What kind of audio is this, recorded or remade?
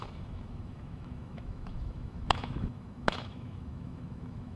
remade